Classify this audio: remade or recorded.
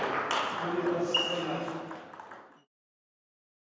recorded